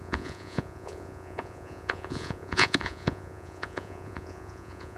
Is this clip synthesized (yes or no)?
yes